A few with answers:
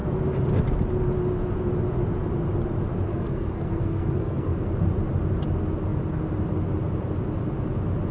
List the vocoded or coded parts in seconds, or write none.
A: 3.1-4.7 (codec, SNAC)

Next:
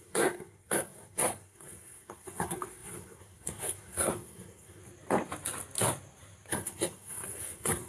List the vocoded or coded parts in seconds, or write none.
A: 0.0-4.8 (codec, SNAC); 6.5-7.9

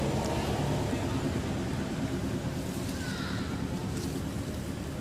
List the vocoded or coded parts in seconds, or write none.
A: none

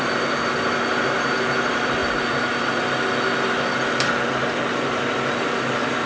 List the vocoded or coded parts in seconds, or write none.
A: none

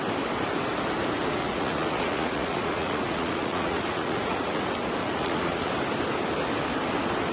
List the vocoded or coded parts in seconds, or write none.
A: 1.4-4.6 (vocoder, Vocos); 5.0-5.7